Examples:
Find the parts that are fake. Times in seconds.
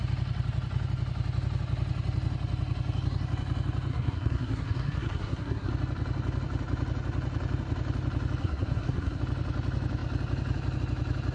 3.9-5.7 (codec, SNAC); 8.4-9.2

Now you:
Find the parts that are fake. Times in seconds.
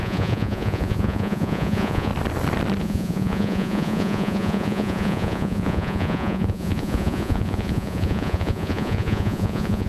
0.0-2.1 (vocoder, Vocos); 2.8-9.9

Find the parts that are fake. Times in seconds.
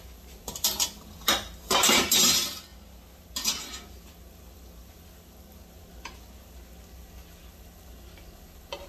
none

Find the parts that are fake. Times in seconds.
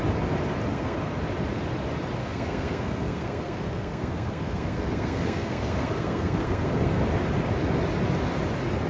0.7-1.2 (codec, SNAC); 2.2-7.0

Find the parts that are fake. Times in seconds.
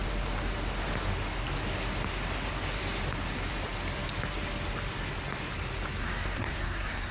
6.0-7.1 (codec, SNAC)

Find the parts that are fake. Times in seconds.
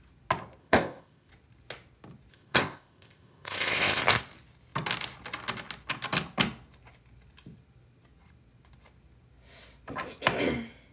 0.6-1.3 (codec, ZipCodec); 2.3-4.0